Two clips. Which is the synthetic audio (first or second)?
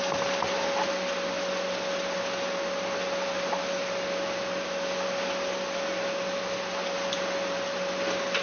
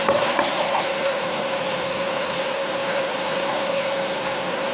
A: second